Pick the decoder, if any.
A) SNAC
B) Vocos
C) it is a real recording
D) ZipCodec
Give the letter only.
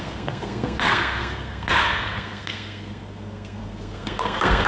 A